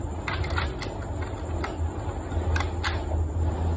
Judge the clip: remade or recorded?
recorded